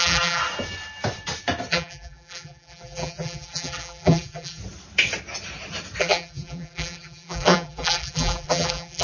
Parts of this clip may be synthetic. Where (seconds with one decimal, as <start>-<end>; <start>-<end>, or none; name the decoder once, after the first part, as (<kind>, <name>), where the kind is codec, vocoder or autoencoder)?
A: 0.0-0.4 (vocoder, BigVGAN v2); 1.7-4.6; 6.0-9.0